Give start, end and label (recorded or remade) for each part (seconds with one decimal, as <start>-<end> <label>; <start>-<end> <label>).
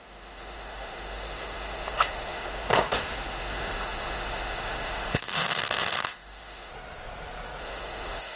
0.0-6.7 remade; 6.7-7.6 recorded; 7.6-8.4 remade